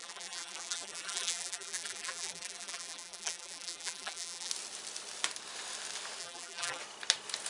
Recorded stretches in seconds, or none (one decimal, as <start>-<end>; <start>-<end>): 4.5-6.2; 6.8-7.5